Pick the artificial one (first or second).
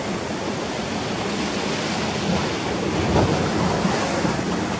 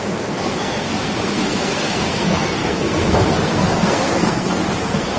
second